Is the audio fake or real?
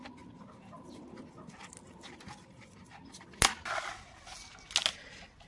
real